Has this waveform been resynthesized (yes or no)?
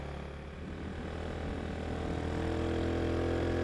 no